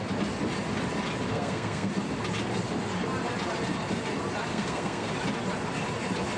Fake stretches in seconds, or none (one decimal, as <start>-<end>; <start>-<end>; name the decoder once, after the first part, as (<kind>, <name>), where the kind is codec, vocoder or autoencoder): 1.3-1.9 (codec, SNAC); 4.5-5.1